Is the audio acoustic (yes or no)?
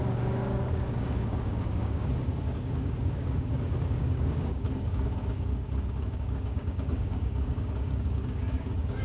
no